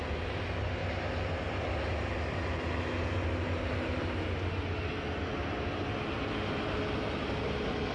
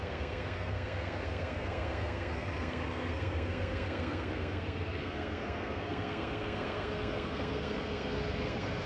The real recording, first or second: first